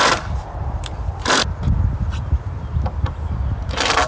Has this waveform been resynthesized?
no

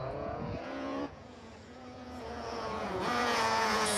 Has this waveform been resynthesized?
yes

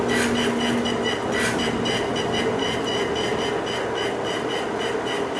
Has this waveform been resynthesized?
no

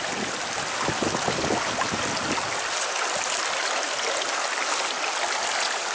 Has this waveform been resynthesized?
no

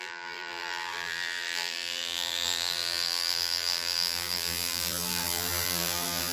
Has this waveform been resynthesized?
yes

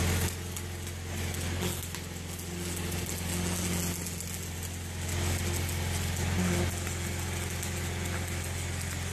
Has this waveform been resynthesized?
no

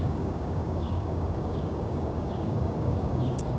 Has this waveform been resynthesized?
yes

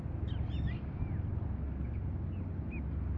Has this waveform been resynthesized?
no